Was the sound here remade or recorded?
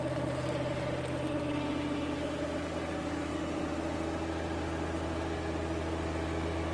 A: recorded